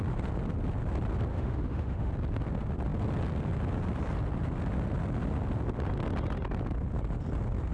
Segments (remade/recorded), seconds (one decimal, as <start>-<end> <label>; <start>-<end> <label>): 0.0-1.3 recorded; 1.3-2.1 remade; 2.1-7.7 recorded